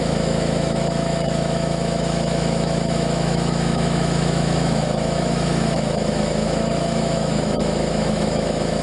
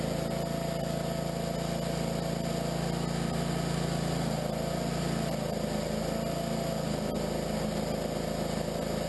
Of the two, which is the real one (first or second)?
second